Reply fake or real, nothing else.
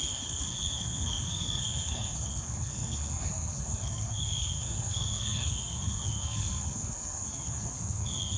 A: fake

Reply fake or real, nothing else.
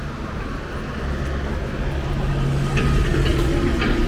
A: real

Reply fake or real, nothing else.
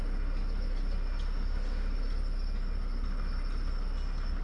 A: real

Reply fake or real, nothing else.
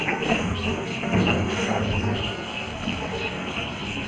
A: fake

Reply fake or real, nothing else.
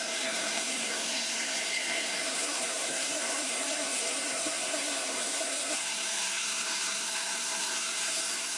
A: fake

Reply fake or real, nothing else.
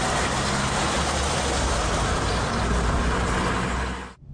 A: real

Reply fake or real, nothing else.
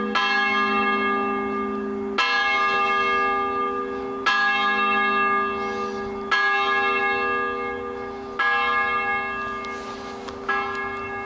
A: real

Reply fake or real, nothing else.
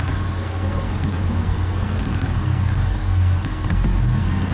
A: fake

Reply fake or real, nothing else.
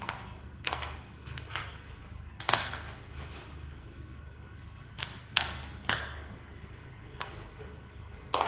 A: fake